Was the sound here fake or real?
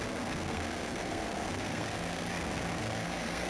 fake